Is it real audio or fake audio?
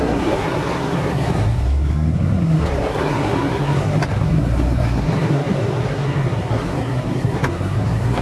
fake